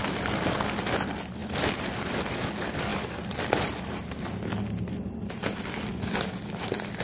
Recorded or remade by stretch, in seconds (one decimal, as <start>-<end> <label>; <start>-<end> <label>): 0.0-1.4 recorded; 1.4-2.3 remade; 2.3-2.9 recorded; 2.9-4.4 remade; 4.4-7.0 recorded